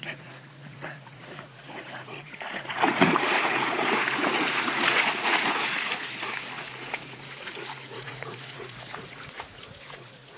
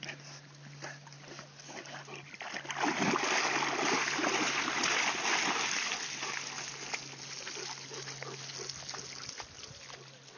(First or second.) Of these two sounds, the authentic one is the second